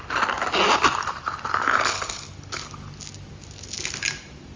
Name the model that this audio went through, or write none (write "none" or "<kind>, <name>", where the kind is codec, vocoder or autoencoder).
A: none